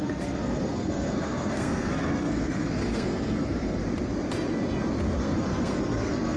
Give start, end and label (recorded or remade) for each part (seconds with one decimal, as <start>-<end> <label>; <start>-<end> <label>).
0.0-3.8 remade; 3.8-5.2 recorded; 5.2-6.4 remade